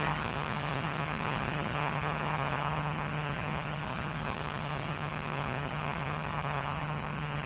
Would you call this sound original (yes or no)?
no